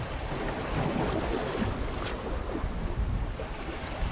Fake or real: real